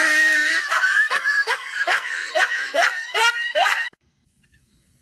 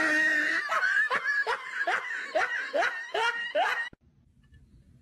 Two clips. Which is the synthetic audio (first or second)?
first